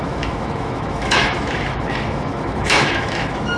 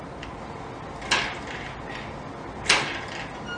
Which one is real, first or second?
second